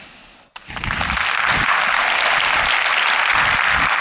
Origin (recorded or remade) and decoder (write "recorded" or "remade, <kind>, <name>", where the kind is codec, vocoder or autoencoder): recorded